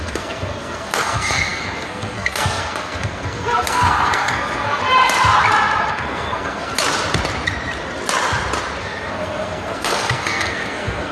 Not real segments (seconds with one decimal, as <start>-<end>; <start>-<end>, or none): 0.0-4.8; 5.9-6.7; 8.8-11.1

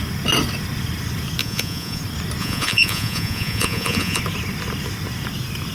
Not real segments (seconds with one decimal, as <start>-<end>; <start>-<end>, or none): 1.4-2.0; 2.4-4.2

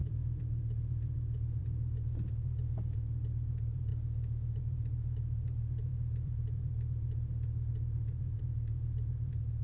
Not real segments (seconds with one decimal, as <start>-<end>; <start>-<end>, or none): 0.0-3.9; 4.6-9.6

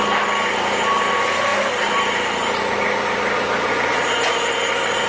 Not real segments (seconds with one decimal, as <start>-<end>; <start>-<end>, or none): none

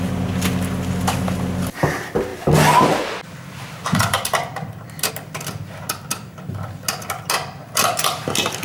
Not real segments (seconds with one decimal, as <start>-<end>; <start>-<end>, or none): none

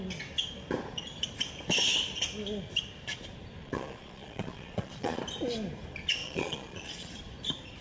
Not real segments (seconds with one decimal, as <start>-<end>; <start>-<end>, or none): 3.6-5.2; 6.2-7.1